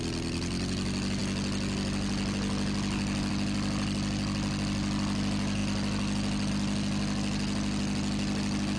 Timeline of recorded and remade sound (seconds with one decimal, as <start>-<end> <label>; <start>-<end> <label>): 0.0-8.8 recorded